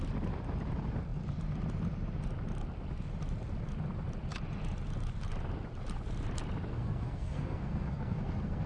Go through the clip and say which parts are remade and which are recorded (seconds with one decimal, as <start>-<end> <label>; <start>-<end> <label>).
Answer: 0.0-6.7 recorded; 6.7-8.7 remade